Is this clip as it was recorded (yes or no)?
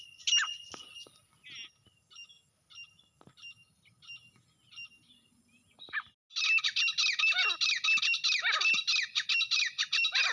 yes